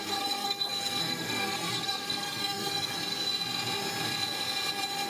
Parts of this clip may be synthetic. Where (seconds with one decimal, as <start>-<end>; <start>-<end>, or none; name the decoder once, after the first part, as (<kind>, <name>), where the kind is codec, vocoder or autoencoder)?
0.0-3.0 (codec, SNAC)